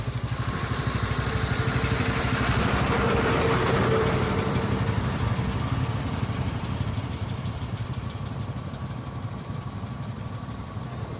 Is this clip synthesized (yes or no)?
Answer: yes